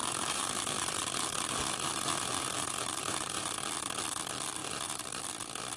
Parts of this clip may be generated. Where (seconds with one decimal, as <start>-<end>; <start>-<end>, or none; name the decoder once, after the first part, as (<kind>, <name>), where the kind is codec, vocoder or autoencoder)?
0.0-3.5 (vocoder, BigVGAN v2); 4.6-5.2